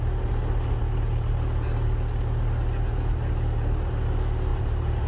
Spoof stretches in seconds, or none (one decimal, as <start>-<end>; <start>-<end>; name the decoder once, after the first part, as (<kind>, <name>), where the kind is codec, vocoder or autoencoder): 4.5-5.1 (vocoder, BigVGAN v2)